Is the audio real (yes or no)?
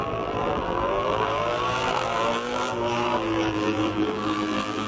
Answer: no